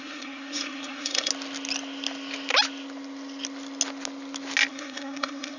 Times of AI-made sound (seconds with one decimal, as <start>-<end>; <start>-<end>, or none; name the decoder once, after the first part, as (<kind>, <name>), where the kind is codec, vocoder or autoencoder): 0.0-1.3 (codec, SNAC); 4.7-5.6